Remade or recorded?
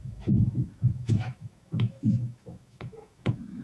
remade